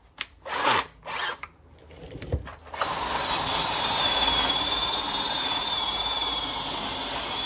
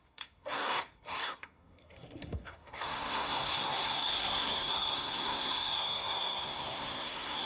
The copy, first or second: second